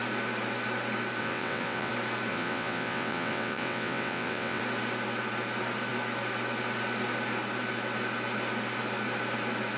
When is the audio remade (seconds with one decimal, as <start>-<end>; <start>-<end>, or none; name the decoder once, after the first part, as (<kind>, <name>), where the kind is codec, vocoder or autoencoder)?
1.2-1.9 (vocoder, WaveNeXt); 2.3-4.6